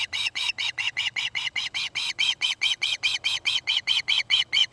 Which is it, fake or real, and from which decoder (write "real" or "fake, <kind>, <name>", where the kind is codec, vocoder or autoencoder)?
fake, vocoder, Vocos